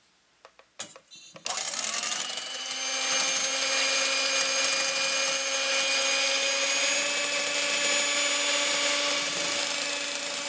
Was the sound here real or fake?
real